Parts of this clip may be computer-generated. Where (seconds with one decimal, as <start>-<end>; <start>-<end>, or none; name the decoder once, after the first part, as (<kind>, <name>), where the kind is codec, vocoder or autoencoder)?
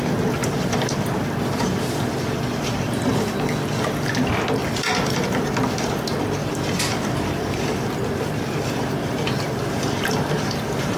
0.4-3.4 (vocoder, BigVGAN v2); 4.6-5.4; 6.4-11.0